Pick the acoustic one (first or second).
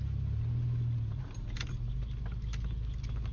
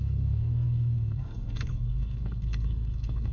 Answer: first